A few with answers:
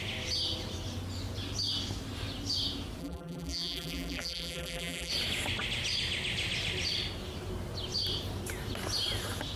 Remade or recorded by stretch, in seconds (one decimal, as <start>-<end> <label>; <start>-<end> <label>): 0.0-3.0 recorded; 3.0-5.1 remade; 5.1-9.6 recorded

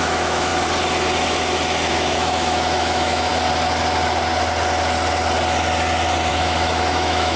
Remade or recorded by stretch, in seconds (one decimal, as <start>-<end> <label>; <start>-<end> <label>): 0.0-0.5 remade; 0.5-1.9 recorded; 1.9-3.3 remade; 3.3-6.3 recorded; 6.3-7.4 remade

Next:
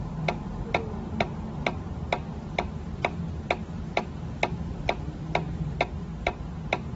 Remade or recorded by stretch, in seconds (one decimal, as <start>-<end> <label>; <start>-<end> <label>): 0.0-7.0 recorded

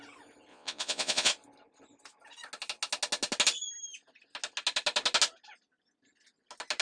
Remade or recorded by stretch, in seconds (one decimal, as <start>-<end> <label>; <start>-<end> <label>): 0.0-0.5 recorded; 0.5-1.3 remade; 1.3-6.8 recorded